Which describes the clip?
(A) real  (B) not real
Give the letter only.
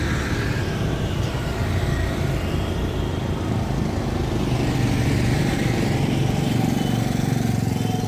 A